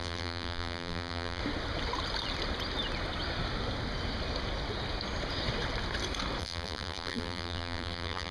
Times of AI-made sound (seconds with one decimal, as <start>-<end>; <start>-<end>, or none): 0.0-1.4; 6.4-8.3